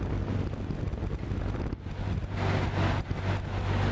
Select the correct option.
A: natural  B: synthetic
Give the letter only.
A